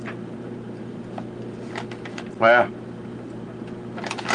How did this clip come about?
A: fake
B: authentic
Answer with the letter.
B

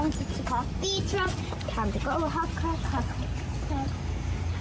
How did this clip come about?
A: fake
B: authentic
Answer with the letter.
B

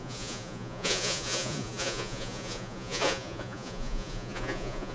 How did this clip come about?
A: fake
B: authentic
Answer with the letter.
A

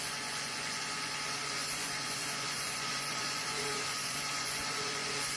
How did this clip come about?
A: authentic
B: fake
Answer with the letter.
B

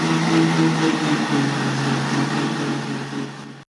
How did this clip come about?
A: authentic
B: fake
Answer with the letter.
A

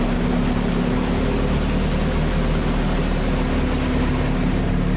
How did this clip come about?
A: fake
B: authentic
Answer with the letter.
B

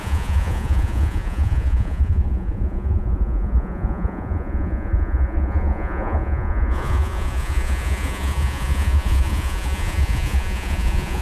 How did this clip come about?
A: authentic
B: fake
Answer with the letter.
B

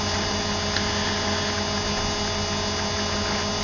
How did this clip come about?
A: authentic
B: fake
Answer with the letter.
A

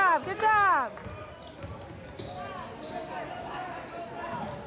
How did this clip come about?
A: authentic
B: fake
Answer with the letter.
A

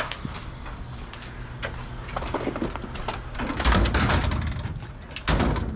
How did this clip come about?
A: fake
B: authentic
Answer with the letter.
B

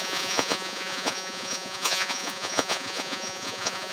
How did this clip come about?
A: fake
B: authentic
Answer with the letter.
A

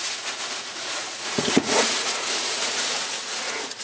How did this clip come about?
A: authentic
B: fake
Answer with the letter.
B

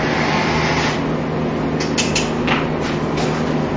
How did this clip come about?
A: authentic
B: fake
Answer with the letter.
A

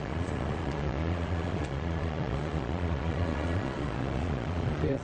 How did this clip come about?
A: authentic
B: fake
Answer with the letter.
B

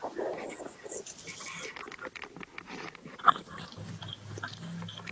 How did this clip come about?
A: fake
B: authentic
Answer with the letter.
B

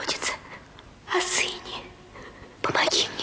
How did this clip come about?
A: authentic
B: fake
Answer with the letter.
A